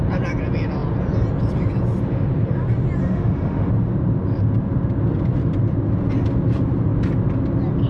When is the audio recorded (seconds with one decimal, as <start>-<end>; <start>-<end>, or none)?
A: 0.0-3.0; 3.7-7.9